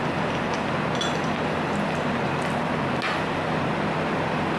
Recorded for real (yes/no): yes